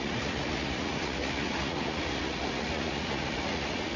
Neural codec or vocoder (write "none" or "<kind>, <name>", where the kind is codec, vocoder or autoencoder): vocoder, Vocos